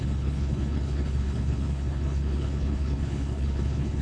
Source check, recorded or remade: remade